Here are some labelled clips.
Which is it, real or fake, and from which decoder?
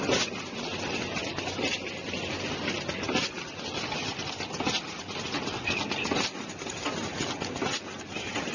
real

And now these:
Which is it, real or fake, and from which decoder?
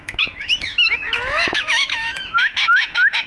fake, autoencoder, DAC-VAE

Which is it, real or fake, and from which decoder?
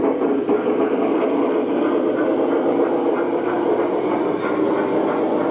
real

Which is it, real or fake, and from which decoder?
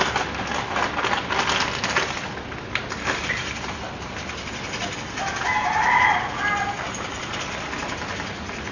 real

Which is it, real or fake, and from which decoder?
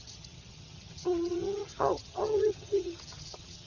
fake, vocoder, HiFi-GAN